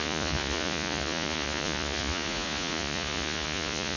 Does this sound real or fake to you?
fake